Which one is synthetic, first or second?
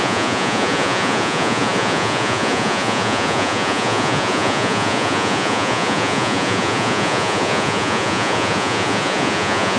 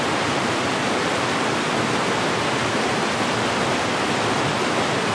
first